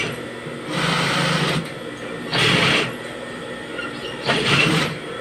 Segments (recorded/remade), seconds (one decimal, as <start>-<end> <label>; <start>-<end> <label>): 0.0-3.7 recorded; 3.7-5.2 remade